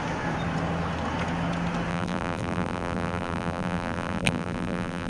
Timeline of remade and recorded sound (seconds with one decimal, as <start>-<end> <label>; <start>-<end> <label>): 0.0-1.9 recorded; 1.9-5.1 remade